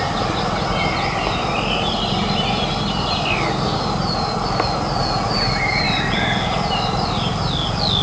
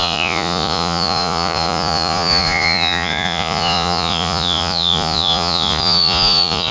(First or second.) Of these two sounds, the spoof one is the second